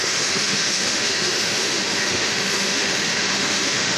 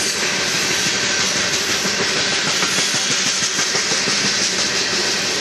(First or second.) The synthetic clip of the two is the first